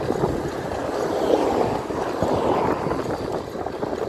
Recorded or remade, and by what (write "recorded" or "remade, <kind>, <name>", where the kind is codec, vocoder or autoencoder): recorded